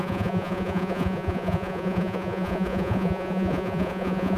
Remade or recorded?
remade